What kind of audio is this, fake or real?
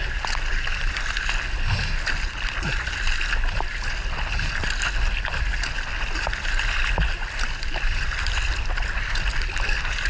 real